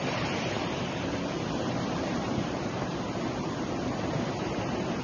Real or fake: fake